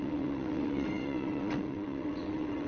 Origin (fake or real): fake